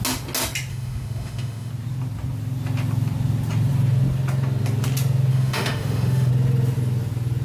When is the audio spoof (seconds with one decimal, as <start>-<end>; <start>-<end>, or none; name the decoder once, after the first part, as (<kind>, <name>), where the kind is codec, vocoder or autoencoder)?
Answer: 0.7-1.7 (autoencoder, DAC-VAE); 5.3-6.3